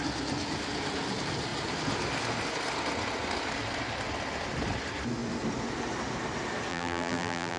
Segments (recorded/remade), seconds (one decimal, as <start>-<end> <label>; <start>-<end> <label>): 0.0-6.7 recorded; 6.7-7.6 remade